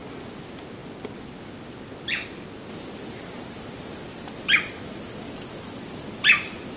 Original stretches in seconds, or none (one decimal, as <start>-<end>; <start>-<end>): 0.0-6.8